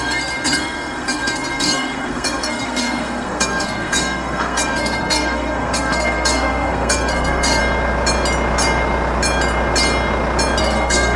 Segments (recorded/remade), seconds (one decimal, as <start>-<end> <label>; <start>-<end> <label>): 0.0-7.6 remade; 7.6-10.6 recorded; 10.6-11.2 remade